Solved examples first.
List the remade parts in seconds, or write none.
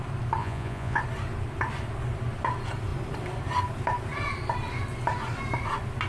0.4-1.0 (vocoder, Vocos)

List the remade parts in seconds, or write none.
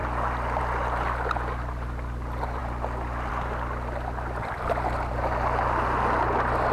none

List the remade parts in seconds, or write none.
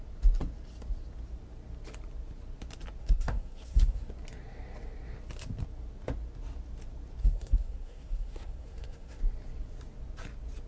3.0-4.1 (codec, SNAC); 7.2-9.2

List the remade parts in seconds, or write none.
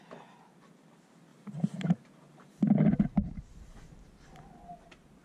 1.3-2.7 (vocoder, BigVGAN v2)